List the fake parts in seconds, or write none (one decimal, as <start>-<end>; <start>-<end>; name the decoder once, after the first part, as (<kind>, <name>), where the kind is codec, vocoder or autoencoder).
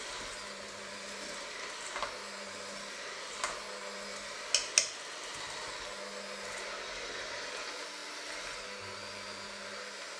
none